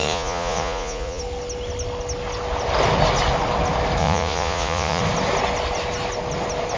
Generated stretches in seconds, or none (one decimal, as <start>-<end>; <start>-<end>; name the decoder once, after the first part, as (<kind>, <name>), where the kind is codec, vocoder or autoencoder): 0.0-1.2 (vocoder, Vocos); 4.0-5.0